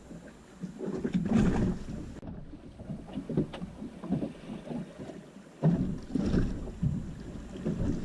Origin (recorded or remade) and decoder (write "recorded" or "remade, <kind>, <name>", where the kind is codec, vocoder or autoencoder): recorded